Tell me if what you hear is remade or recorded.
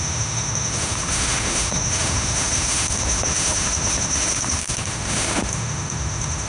remade